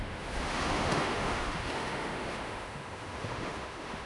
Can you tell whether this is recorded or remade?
remade